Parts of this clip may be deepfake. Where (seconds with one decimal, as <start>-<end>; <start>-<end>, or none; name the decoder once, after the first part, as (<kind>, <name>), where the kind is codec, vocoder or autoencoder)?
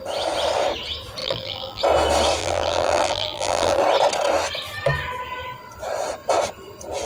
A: 1.2-1.8 (vocoder, BigVGAN v2); 2.4-3.8